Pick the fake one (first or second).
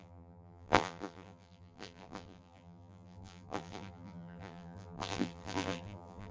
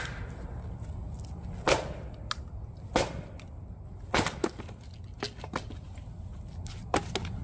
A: first